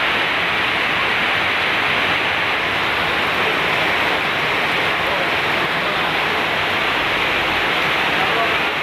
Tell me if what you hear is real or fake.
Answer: real